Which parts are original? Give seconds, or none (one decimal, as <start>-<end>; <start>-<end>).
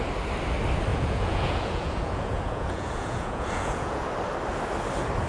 0.0-0.9; 4.1-5.3